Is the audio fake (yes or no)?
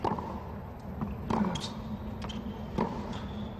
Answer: no